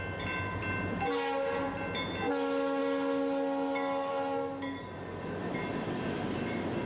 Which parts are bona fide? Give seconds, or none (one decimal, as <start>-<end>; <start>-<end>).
0.0-6.9